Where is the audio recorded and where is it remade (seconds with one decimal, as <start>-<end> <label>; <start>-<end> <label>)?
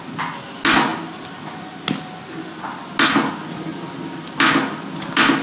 0.0-5.4 recorded